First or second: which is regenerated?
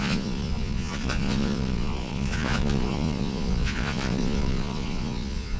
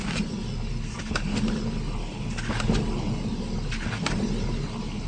first